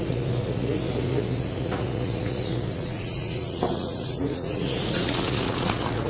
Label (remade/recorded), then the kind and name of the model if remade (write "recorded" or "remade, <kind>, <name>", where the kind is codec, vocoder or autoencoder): remade, vocoder, Vocos